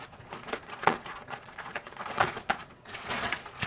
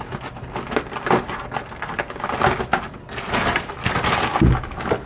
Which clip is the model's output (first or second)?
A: first